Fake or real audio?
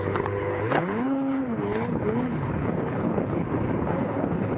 fake